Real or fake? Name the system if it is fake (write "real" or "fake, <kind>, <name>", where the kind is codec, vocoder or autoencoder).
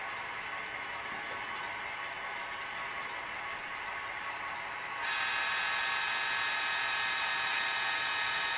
real